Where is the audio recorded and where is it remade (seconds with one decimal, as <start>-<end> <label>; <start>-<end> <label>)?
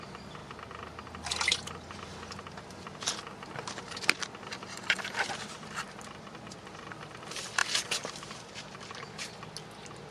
0.0-7.6 remade; 7.6-8.2 recorded; 8.2-10.1 remade